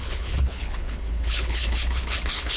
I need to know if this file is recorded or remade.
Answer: remade